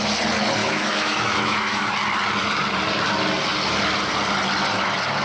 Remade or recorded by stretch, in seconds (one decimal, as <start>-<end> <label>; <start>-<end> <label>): 0.0-0.6 recorded; 0.6-1.9 remade; 1.9-5.2 recorded